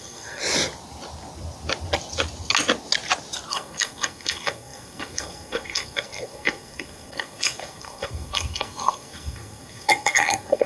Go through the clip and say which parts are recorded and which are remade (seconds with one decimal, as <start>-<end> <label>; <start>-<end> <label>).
0.0-0.4 remade; 0.4-3.5 recorded; 3.5-10.7 remade